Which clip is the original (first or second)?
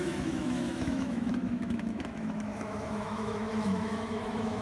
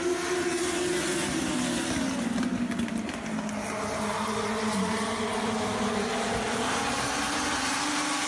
second